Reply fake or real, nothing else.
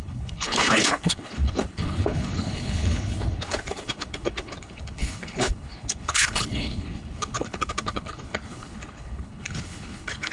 fake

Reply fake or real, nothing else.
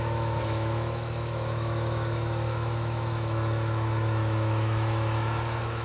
fake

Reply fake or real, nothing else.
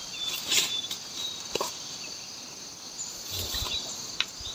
fake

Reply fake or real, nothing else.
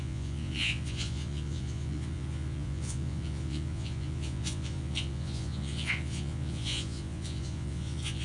fake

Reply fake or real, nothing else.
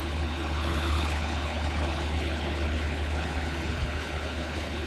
fake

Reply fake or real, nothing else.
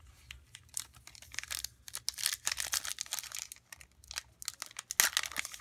real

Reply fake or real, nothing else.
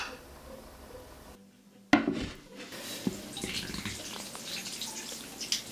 real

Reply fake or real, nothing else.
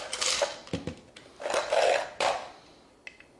real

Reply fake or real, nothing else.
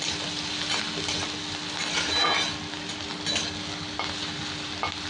real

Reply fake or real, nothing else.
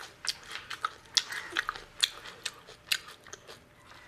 real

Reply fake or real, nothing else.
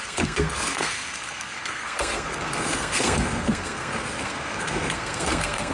fake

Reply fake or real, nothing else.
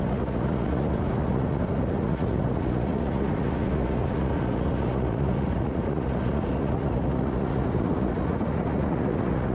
fake